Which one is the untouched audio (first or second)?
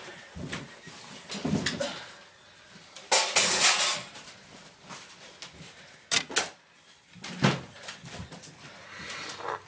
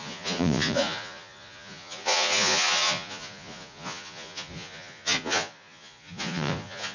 first